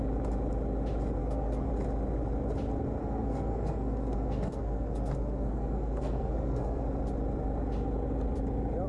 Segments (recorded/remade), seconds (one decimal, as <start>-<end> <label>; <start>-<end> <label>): 0.0-1.2 recorded; 1.2-1.7 remade; 1.7-3.0 recorded; 3.0-6.8 remade; 6.8-8.9 recorded